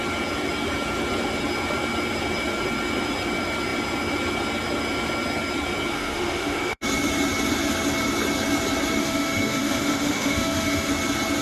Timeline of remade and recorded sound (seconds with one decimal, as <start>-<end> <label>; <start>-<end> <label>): 0.0-5.9 recorded; 5.9-6.8 remade; 6.8-9.0 recorded; 9.0-10.9 remade; 10.9-11.4 recorded